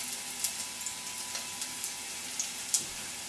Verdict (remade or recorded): recorded